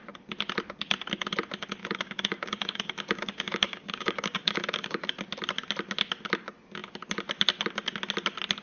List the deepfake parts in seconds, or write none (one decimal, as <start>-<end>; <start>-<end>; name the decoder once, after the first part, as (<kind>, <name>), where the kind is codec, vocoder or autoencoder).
1.8-5.1 (codec, DAC)